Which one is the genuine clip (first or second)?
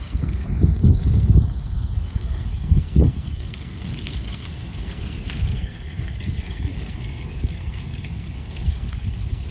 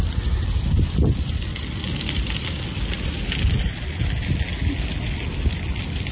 second